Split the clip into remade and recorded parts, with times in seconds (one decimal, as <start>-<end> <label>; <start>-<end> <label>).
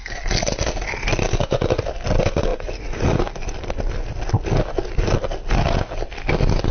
0.0-6.7 recorded